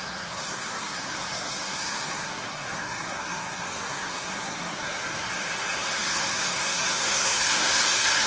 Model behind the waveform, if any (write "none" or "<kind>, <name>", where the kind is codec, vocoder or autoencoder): codec, SNAC